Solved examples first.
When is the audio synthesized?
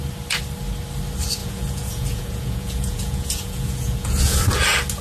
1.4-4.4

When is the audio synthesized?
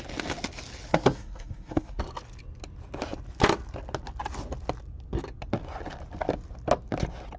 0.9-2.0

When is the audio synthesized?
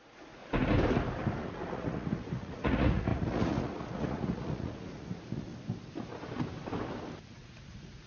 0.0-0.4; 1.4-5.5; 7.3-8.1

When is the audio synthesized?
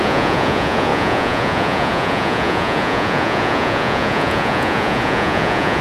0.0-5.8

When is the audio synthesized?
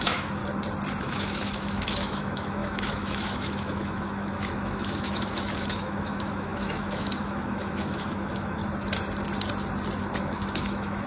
0.0-0.4; 1.0-8.6; 10.2-11.1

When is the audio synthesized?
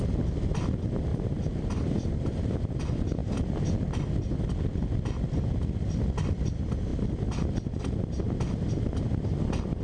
1.1-2.8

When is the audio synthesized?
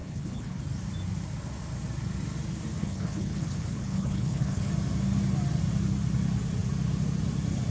0.0-0.6; 2.8-4.7